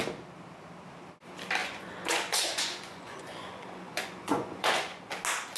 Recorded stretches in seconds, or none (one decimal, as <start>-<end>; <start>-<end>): 0.0-1.6; 5.0-5.6